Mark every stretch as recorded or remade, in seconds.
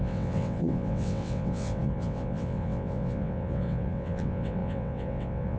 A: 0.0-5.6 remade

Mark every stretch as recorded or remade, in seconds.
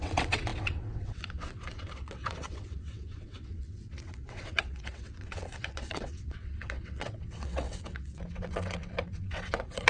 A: 0.0-9.9 remade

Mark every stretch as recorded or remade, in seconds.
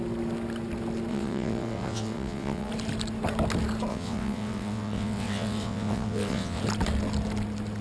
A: 0.0-1.1 recorded; 1.1-2.7 remade; 2.7-3.9 recorded; 3.9-6.6 remade; 6.6-7.8 recorded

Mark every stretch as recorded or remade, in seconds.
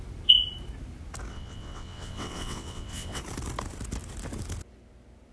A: 0.0-1.3 recorded; 1.3-3.2 remade; 3.2-5.3 recorded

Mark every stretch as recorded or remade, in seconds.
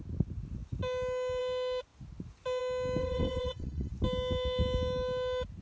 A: 0.0-3.0 recorded; 3.0-3.9 remade; 3.9-5.6 recorded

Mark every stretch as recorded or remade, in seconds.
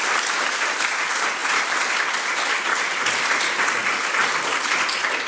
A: 0.0-5.3 recorded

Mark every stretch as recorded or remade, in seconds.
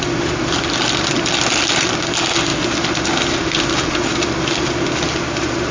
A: 0.0-5.7 recorded